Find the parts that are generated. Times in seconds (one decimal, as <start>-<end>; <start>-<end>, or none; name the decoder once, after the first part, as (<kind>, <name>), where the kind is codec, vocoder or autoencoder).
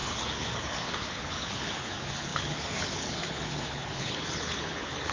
0.0-5.1 (codec, HILCodec)